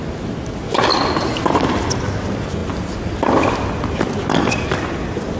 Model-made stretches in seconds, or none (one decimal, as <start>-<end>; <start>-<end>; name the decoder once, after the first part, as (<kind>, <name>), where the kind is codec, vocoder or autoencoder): none